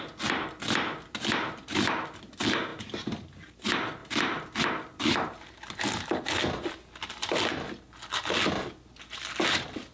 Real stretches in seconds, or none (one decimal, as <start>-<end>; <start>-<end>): 0.0-9.9